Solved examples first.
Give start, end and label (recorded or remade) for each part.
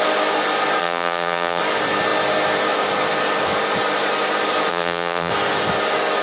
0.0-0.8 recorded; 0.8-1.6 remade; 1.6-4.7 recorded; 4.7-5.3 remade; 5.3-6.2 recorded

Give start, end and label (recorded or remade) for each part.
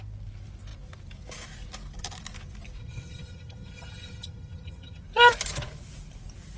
0.0-2.8 recorded; 2.8-5.0 remade; 5.0-6.6 recorded